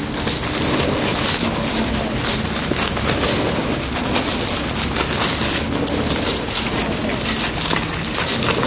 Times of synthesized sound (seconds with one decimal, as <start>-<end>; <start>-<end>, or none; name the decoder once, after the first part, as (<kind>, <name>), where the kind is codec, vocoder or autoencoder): 6.3-6.8 (vocoder, Vocos)